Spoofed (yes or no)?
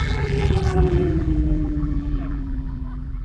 yes